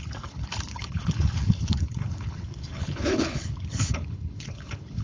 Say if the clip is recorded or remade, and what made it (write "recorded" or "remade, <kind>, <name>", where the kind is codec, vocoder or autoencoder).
remade, codec, HILCodec